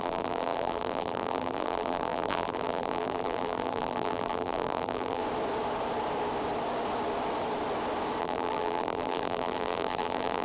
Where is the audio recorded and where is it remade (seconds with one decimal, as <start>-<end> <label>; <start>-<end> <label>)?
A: 0.0-5.2 remade; 5.2-8.2 recorded; 8.2-10.4 remade